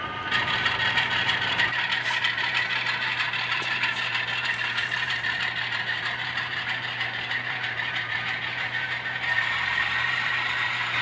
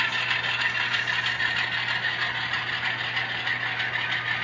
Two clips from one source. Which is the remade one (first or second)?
first